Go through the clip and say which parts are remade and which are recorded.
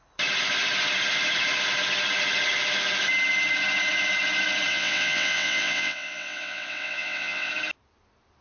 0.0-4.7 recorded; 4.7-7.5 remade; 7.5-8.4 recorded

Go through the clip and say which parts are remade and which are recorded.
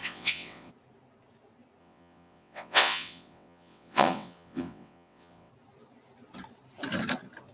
0.0-0.7 remade; 0.7-1.8 recorded; 1.8-5.5 remade; 5.5-7.5 recorded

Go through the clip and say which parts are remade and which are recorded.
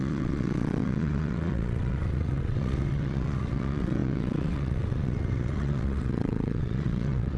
0.0-7.4 remade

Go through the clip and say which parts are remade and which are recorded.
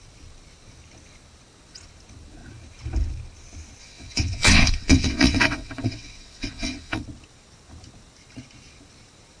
0.0-3.8 recorded; 3.8-7.0 remade; 7.0-9.4 recorded